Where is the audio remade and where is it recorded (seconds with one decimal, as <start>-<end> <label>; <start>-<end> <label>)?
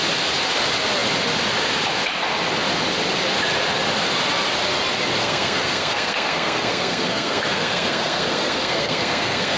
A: 0.0-5.2 recorded; 5.2-9.6 remade